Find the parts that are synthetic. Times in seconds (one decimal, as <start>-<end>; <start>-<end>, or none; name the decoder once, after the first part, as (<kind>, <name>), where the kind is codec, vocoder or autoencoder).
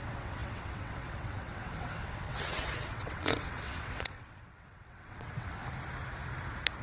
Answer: 0.0-5.6 (vocoder, WaveNeXt)